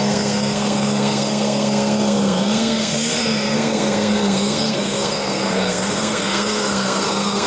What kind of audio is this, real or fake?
fake